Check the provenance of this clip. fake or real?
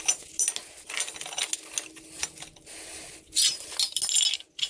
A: real